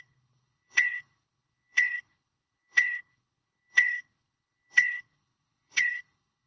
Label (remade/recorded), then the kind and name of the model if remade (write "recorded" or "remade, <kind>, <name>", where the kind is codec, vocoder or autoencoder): remade, codec, HILCodec